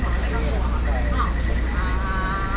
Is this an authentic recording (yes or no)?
yes